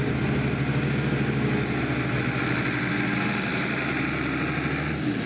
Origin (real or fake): real